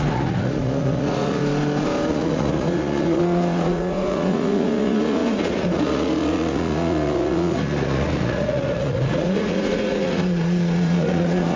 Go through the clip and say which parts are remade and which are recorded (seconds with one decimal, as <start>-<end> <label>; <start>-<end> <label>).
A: 0.0-1.4 remade; 1.4-2.1 recorded; 2.1-11.6 remade

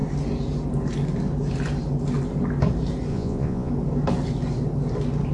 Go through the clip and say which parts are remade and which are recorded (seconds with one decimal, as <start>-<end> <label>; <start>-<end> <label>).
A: 0.0-3.1 recorded; 3.1-3.7 remade; 3.7-5.3 recorded

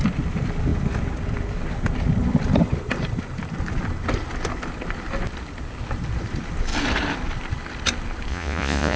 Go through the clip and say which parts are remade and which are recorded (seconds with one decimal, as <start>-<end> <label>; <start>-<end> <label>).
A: 0.0-8.3 recorded; 8.3-9.0 remade